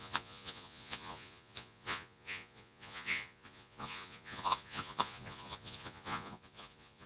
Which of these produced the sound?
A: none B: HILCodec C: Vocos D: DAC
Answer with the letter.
C